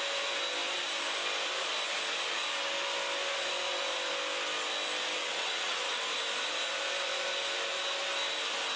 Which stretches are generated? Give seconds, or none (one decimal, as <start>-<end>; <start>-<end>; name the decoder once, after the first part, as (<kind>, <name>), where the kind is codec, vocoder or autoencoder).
5.2-6.0 (vocoder, WaveNeXt)